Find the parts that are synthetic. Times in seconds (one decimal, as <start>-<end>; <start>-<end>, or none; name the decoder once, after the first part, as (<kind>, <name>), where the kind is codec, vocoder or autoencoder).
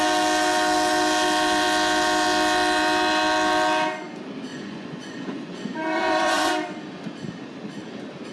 4.5-6.5 (vocoder, Vocos)